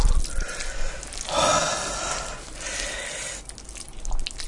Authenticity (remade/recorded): recorded